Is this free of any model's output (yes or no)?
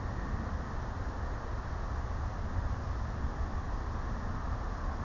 yes